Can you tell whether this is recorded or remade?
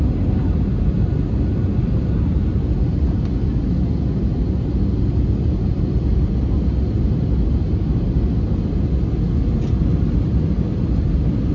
recorded